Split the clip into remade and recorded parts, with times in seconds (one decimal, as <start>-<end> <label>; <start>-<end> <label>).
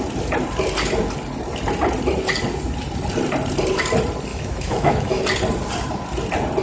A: 0.0-4.3 recorded; 4.3-5.2 remade; 5.2-6.6 recorded